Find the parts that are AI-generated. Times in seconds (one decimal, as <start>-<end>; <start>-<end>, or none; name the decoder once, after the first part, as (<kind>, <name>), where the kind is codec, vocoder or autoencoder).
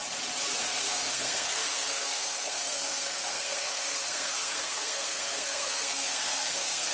0.6-6.9 (codec, SNAC)